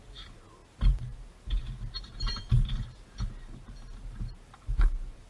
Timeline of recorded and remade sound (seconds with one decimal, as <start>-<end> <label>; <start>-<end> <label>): 0.0-5.3 remade

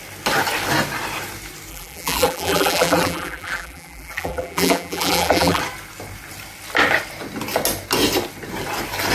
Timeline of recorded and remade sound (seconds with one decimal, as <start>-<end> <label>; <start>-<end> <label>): 0.0-1.7 recorded; 1.7-5.6 remade; 5.6-9.1 recorded

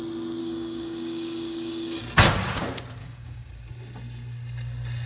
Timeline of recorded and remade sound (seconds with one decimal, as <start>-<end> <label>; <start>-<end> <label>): 0.0-0.4 recorded; 0.4-2.0 remade; 2.0-3.0 recorded; 3.0-3.5 remade; 3.5-5.1 recorded

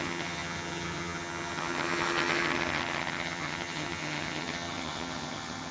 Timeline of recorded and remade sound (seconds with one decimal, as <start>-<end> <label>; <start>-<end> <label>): 0.0-5.7 remade

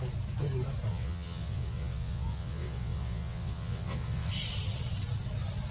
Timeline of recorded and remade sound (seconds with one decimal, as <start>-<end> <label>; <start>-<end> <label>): 0.0-0.9 recorded; 0.9-4.3 remade; 4.3-5.7 recorded

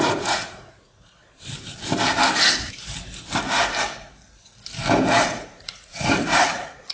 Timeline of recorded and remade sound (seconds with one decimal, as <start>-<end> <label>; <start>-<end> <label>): 0.0-1.2 remade; 1.2-5.3 recorded; 5.3-6.9 remade

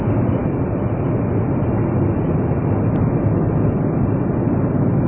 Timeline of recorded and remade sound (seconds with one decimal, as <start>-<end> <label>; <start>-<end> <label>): 0.0-5.1 recorded